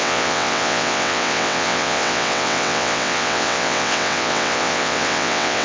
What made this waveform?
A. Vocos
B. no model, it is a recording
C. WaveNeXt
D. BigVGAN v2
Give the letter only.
C